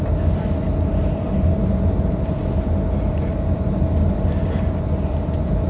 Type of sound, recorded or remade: recorded